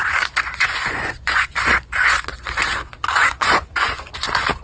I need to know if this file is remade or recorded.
remade